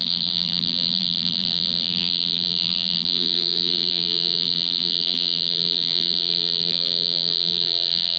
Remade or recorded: remade